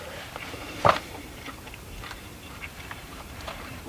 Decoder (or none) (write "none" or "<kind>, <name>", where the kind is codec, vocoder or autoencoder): vocoder, BigVGAN v2